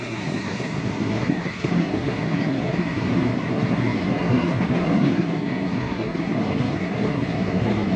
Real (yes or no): no